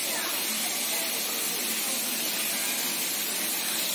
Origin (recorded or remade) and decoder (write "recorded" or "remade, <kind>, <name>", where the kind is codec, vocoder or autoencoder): recorded